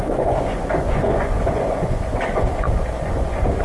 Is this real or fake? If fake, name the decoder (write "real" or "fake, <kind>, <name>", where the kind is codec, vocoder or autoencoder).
fake, vocoder, Vocos